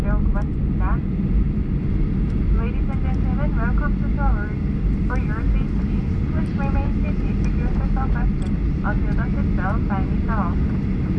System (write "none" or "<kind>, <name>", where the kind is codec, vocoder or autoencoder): none